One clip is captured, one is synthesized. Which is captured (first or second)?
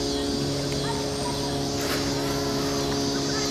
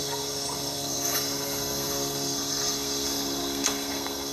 first